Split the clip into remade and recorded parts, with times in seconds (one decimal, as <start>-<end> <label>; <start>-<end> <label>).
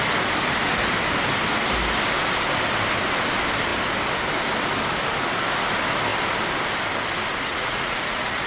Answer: 0.0-7.5 recorded; 7.5-8.5 remade